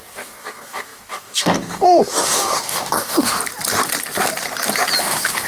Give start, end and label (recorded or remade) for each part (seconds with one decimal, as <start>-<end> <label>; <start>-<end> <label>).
0.0-3.4 remade; 3.4-5.0 recorded; 5.0-5.5 remade